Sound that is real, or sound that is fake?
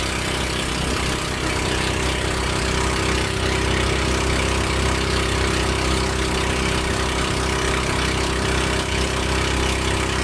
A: real